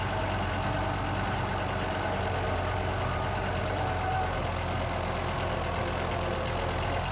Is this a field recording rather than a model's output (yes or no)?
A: yes